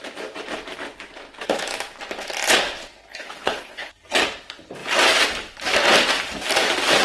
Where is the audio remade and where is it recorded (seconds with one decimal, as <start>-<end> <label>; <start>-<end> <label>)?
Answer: 0.0-3.1 recorded; 3.1-3.9 remade; 3.9-7.0 recorded